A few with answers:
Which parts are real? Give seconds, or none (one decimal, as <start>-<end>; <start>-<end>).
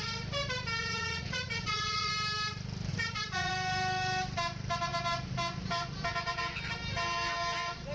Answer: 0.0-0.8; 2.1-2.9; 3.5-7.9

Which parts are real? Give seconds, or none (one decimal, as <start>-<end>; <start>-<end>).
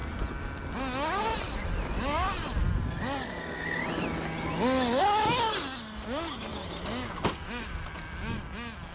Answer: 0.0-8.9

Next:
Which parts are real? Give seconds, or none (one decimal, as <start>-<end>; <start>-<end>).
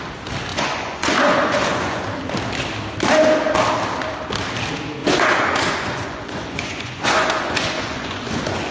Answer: 0.0-0.5; 2.0-5.0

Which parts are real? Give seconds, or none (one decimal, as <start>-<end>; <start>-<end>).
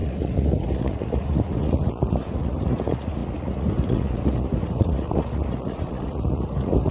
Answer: none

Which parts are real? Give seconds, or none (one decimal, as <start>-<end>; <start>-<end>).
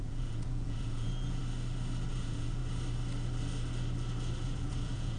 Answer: 1.4-2.1; 2.6-4.4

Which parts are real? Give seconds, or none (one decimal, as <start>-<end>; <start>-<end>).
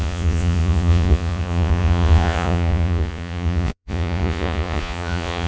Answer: none